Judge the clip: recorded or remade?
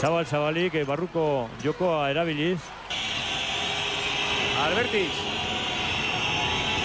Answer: recorded